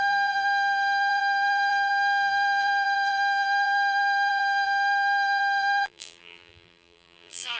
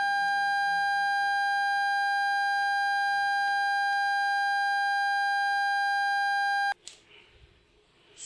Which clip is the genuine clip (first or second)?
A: second